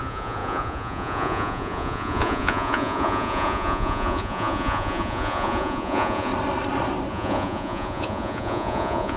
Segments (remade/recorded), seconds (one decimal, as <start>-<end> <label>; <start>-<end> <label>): 0.0-6.3 remade; 6.3-7.1 recorded; 7.1-9.2 remade